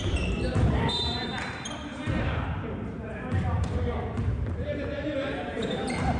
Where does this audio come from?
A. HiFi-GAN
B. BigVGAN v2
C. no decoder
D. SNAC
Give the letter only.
B